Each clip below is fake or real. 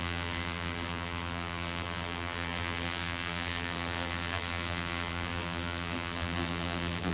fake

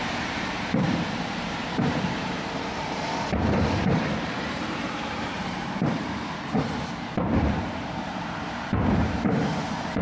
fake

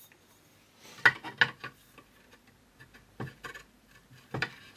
real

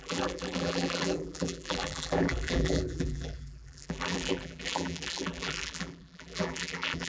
fake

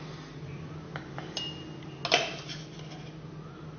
real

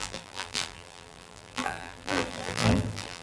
fake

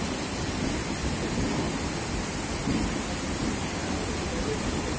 real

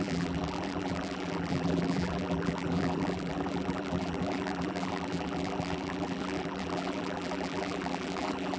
fake